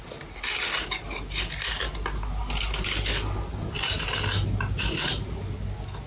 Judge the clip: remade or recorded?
recorded